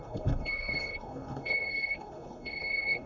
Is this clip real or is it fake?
fake